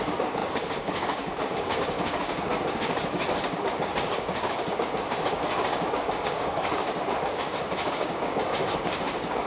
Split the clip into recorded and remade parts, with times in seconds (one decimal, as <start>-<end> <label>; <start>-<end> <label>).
0.0-9.5 remade